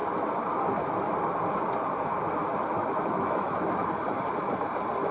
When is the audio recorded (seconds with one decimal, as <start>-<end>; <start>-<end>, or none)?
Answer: 0.0-3.1; 3.8-5.1